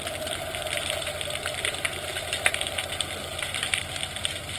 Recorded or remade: recorded